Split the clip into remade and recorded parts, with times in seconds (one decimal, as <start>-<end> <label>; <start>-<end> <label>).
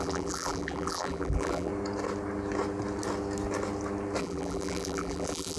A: 0.0-1.7 remade; 1.7-4.2 recorded; 4.2-5.6 remade